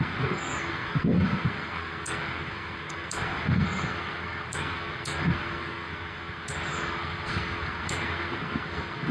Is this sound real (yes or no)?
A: no